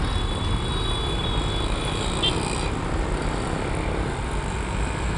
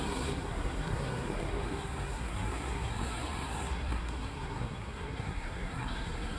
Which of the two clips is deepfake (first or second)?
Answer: second